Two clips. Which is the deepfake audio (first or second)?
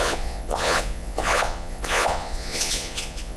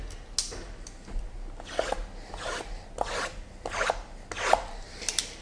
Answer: first